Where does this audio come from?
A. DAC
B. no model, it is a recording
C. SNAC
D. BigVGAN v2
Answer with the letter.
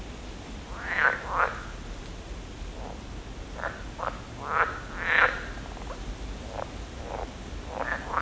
B